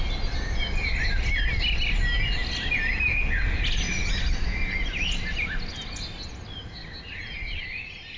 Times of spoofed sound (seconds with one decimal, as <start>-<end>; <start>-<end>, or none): none